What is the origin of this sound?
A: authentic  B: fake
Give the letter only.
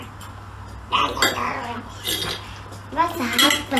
A